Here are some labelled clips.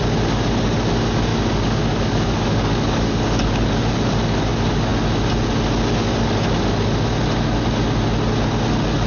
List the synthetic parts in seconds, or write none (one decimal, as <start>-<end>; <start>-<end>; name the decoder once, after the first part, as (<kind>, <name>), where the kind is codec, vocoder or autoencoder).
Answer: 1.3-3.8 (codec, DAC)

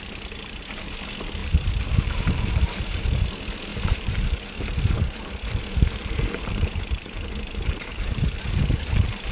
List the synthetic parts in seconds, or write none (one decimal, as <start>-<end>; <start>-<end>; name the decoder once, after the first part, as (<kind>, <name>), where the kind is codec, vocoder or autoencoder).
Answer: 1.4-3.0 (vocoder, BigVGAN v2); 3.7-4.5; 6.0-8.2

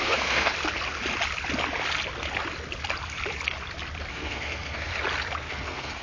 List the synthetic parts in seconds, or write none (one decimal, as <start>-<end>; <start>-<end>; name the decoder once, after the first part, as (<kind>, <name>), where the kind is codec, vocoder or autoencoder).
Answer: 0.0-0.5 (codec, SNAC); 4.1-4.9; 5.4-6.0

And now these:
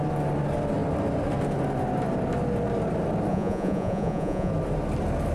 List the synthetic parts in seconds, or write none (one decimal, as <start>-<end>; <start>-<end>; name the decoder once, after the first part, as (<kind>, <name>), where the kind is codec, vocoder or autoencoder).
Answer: 3.3-4.5 (vocoder, Vocos)

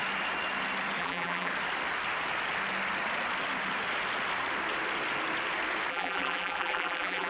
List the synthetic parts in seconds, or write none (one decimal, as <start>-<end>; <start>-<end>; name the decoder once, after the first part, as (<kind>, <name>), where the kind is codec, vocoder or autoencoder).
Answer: 1.0-1.5 (vocoder, BigVGAN v2); 5.9-7.3